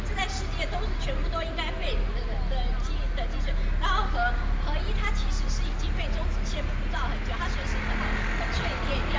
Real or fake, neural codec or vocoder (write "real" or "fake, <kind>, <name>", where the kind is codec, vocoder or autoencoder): real